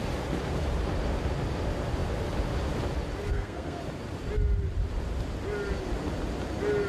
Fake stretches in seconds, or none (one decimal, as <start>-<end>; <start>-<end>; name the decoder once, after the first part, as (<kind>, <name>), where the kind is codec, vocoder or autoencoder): 3.3-3.8 (codec, SNAC)